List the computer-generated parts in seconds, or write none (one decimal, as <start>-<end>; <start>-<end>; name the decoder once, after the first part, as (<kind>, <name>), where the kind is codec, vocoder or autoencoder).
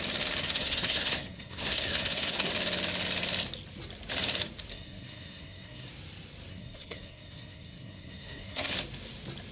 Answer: 0.4-2.5 (codec, SNAC); 4.7-5.9; 6.5-8.7